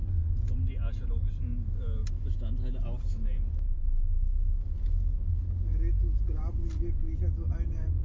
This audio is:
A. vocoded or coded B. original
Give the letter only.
B